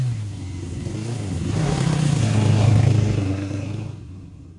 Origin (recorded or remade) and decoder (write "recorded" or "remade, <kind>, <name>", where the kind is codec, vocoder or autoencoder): remade, codec, SNAC